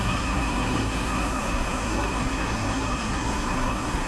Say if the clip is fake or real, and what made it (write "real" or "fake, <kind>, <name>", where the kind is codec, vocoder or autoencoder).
fake, codec, SNAC